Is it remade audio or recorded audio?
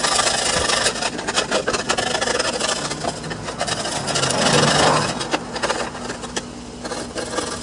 recorded